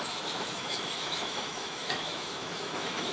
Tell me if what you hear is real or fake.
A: fake